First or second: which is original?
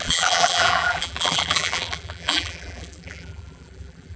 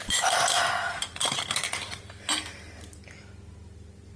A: second